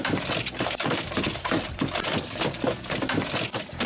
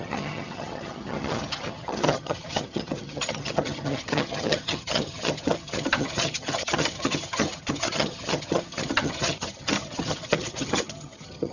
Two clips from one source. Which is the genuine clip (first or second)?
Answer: first